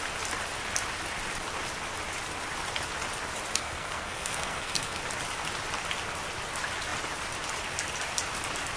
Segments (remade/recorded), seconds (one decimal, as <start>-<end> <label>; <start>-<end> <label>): 0.0-3.5 recorded; 3.5-5.0 remade; 5.0-8.8 recorded